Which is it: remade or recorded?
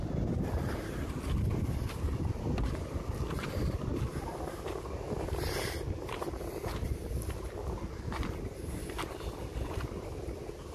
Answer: recorded